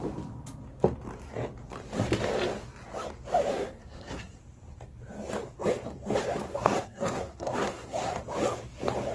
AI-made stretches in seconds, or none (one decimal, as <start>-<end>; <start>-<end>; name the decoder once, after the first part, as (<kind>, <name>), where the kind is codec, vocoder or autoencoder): 3.5-4.4 (codec, SNAC); 6.5-8.2